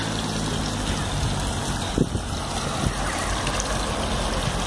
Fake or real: real